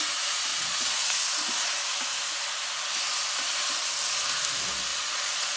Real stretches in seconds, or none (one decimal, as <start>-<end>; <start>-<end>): 0.0-0.5; 1.1-4.9